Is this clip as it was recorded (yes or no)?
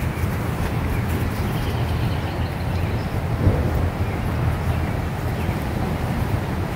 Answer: yes